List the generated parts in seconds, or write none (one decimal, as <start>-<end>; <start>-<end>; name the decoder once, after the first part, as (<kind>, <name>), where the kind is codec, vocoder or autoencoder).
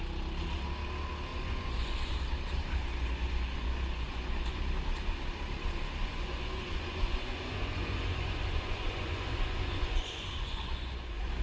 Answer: 1.3-2.2 (vocoder, Vocos); 2.9-4.6; 6.0-11.4